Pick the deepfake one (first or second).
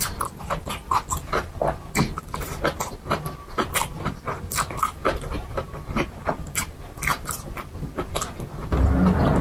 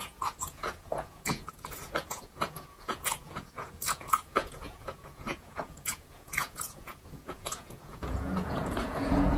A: second